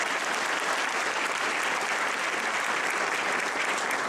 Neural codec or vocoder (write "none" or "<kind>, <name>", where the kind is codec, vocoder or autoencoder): none